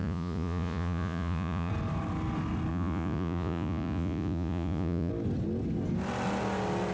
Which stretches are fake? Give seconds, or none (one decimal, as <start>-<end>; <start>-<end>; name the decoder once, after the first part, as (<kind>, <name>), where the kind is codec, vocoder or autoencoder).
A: 0.0-1.7 (vocoder, Vocos); 2.7-5.1

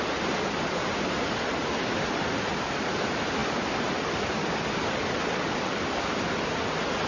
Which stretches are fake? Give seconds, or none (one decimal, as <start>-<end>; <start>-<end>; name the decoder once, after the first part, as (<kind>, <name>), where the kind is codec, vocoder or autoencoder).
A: none

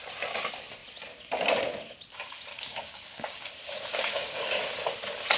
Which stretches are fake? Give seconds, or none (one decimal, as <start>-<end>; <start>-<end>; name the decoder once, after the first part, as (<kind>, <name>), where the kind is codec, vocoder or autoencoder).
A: 2.5-3.5 (codec, DAC); 3.9-4.6

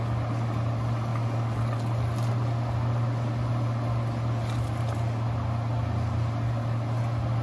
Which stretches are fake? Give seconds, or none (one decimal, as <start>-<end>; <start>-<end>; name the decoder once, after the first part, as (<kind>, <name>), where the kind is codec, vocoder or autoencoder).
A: none

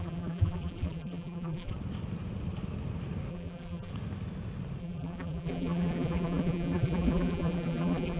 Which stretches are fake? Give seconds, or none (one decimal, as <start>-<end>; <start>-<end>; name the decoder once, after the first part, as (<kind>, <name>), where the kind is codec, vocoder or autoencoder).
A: 0.0-1.7 (vocoder, BigVGAN v2); 3.3-3.9; 4.8-8.2

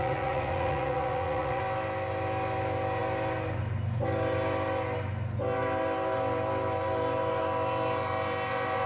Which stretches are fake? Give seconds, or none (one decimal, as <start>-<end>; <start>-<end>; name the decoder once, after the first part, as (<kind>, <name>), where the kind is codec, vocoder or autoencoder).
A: 0.0-1.6 (vocoder, Vocos)

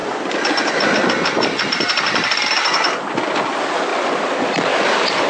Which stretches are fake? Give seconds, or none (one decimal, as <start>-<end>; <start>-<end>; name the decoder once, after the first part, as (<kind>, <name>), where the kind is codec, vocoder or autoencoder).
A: none